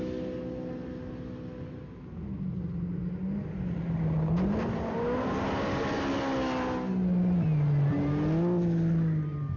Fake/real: real